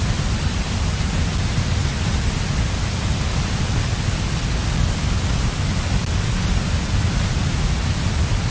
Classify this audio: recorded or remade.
recorded